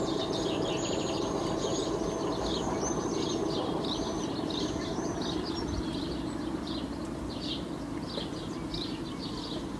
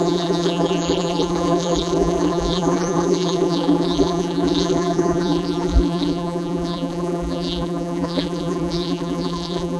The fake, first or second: second